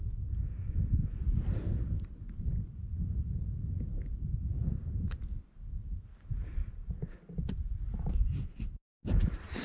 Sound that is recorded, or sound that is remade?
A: recorded